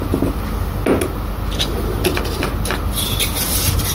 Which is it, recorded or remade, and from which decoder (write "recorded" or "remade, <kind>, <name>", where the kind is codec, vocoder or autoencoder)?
recorded